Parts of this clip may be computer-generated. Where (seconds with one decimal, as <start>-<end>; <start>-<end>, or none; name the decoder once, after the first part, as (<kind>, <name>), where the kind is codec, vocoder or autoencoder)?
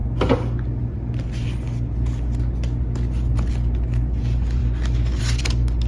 none